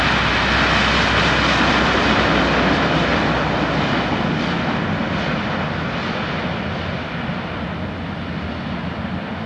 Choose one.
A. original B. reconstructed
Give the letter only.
A